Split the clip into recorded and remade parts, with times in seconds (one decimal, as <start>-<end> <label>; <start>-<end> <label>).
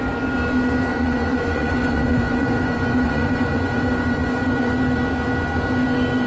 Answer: 0.0-0.9 recorded; 0.9-4.7 remade; 4.7-6.3 recorded